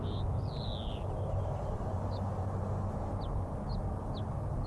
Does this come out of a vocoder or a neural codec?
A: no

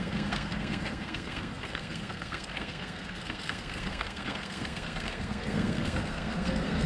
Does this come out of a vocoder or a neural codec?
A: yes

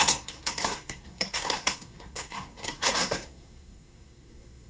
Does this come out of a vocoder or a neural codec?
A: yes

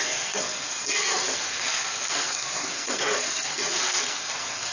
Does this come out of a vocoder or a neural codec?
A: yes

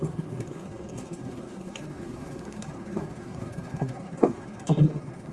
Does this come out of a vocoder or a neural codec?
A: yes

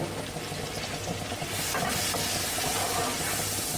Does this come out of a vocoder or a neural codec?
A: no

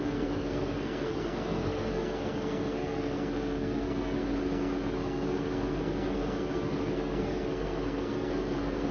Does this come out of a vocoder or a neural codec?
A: yes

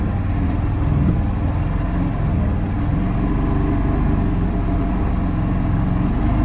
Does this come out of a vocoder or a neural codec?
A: no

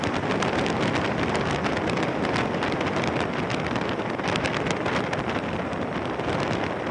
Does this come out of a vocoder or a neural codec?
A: no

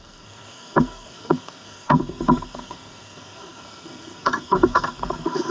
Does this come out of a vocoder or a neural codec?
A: yes